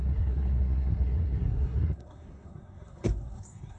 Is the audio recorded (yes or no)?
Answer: no